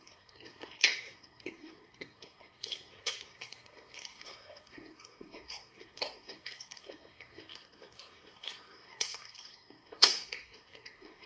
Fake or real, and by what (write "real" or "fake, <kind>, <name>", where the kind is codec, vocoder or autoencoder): fake, codec, SNAC